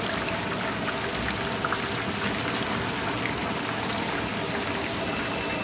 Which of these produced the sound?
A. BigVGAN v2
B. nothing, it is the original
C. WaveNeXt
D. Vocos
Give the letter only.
B